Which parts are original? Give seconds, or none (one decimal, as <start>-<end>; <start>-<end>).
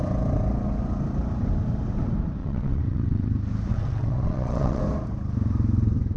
0.0-2.4; 3.3-3.7; 4.8-6.2